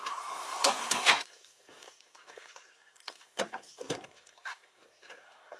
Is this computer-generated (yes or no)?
yes